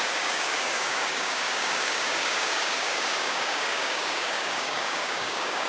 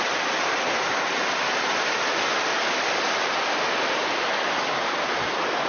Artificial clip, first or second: first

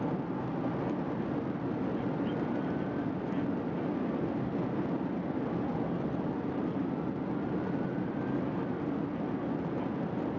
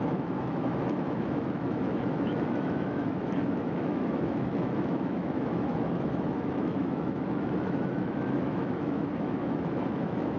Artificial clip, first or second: second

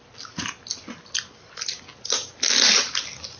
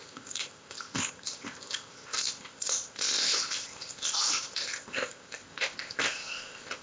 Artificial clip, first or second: second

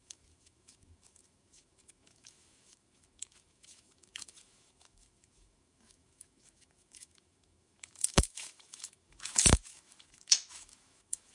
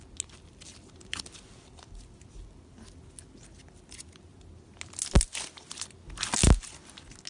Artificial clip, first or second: first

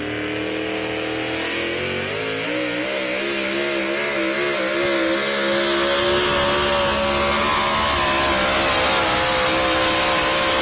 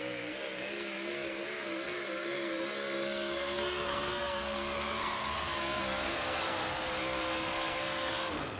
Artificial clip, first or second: second